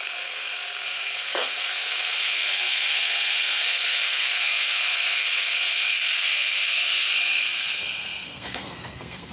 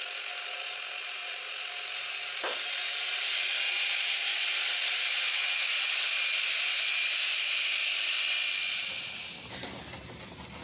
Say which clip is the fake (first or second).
first